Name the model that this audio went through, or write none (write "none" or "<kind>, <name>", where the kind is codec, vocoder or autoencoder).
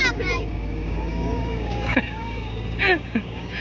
codec, DAC